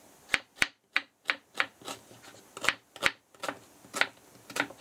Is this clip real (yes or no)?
yes